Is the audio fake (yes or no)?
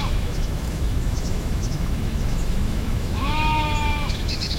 yes